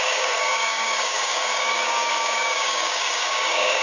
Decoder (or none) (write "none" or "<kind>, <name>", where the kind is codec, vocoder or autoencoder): codec, DAC